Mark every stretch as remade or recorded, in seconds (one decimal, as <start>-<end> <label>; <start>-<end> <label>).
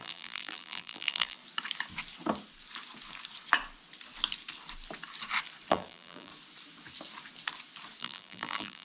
0.0-1.4 remade; 1.4-5.7 recorded; 5.7-6.3 remade; 6.3-8.0 recorded; 8.0-8.8 remade